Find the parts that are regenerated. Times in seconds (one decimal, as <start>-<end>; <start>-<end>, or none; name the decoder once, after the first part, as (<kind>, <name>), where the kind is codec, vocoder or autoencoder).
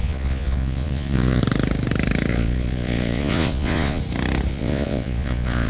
0.0-1.4 (vocoder, Vocos); 2.3-4.0; 4.5-5.7